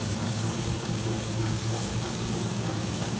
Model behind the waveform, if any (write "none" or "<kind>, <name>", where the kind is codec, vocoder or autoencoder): codec, DAC